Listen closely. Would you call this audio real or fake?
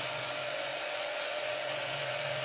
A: fake